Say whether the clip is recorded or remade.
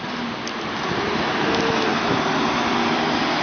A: recorded